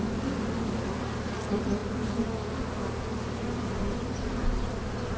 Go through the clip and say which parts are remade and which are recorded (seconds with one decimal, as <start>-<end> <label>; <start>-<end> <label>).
0.0-5.2 recorded